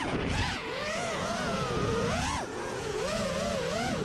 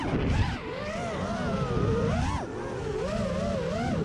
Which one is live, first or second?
second